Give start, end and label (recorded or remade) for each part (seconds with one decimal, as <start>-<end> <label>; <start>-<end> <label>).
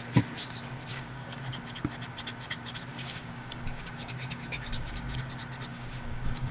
0.0-0.9 recorded; 0.9-1.4 remade; 1.4-2.9 recorded; 2.9-5.3 remade; 5.3-5.7 recorded; 5.7-6.5 remade